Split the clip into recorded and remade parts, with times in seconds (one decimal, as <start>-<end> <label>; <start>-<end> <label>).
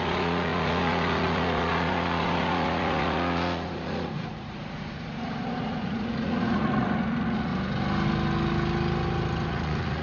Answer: 0.0-7.5 remade; 7.5-9.5 recorded; 9.5-10.0 remade